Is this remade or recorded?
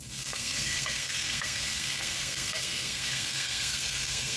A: remade